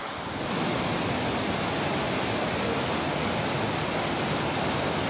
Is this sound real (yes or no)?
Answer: yes